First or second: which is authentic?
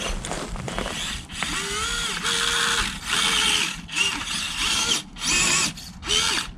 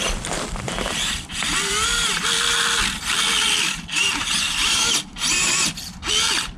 first